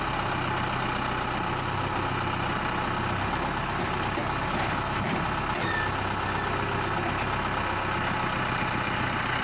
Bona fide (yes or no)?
yes